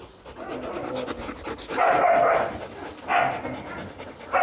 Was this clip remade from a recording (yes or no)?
no